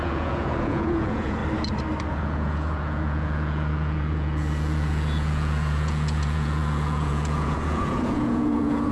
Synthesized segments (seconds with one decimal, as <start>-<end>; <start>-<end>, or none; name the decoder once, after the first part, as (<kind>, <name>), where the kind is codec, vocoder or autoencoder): 0.0-1.4 (vocoder, Vocos); 2.1-8.9